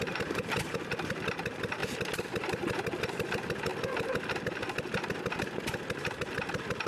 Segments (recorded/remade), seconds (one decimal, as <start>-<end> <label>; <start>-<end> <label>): 0.0-3.7 remade; 3.7-6.1 recorded; 6.1-6.9 remade